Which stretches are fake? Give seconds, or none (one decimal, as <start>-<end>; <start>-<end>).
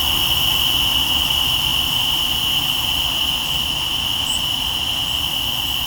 none